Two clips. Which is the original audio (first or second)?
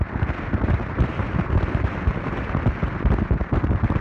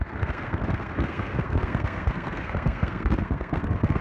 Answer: first